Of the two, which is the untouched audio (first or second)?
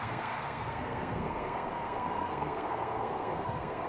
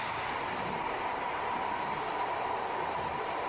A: second